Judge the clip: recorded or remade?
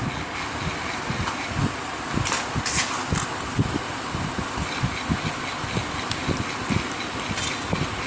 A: recorded